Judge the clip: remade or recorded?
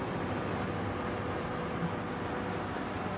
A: recorded